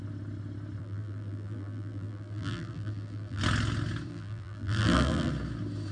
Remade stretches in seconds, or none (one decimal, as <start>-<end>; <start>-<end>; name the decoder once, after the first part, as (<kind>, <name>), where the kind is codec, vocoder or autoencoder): 0.8-3.4 (vocoder, BigVGAN v2); 4.1-5.3